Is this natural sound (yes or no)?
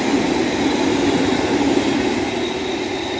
yes